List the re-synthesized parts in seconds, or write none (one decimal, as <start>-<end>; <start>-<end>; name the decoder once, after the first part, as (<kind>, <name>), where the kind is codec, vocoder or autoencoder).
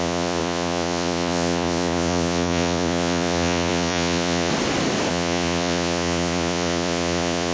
0.0-4.5 (vocoder, Vocos); 5.1-7.5